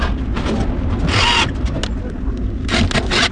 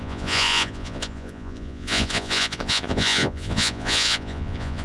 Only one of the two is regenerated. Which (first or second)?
second